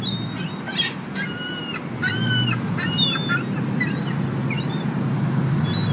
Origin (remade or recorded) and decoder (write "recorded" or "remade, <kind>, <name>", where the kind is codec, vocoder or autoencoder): recorded